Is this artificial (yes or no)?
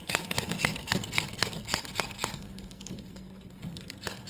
yes